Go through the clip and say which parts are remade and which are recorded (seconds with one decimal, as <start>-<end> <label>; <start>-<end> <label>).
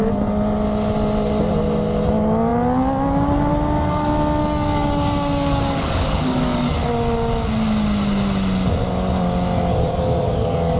0.0-4.4 recorded; 4.4-6.9 remade; 6.9-9.7 recorded; 9.7-10.8 remade